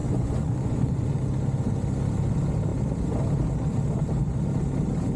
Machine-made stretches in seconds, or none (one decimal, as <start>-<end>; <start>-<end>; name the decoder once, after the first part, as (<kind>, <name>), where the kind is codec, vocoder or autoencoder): 0.0-1.2 (vocoder, Vocos)